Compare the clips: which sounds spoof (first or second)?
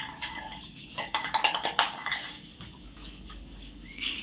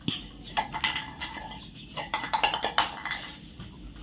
first